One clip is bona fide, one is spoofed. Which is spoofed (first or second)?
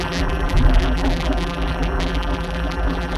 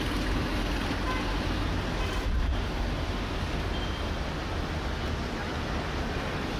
first